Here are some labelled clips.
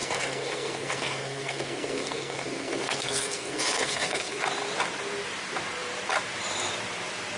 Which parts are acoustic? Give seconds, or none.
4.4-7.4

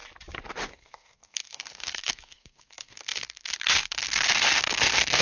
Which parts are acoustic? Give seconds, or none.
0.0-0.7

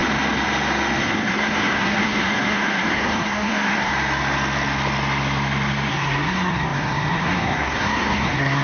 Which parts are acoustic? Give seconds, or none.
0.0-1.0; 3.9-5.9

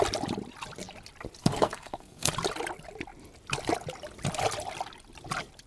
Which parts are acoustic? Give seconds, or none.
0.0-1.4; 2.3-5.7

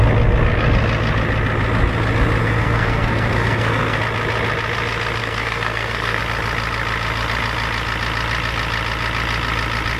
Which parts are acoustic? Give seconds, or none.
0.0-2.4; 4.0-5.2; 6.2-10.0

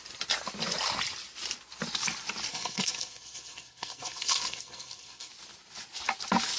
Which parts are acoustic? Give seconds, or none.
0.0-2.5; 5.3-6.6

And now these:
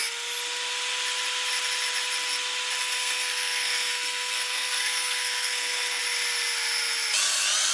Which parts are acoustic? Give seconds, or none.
0.0-2.8; 6.0-7.7